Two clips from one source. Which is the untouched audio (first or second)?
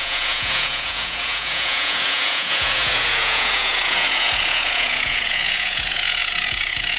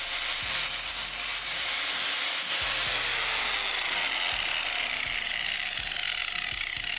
second